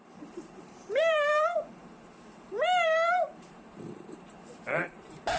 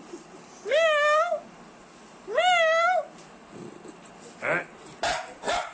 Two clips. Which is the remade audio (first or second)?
first